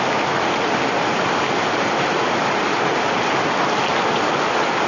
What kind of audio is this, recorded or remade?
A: recorded